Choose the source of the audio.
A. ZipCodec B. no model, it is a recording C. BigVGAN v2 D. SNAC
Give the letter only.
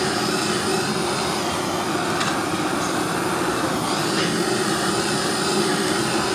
B